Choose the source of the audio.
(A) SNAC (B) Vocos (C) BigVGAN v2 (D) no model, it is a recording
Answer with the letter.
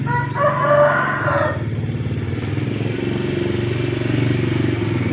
D